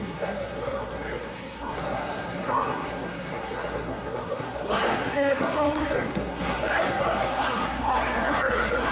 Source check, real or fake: fake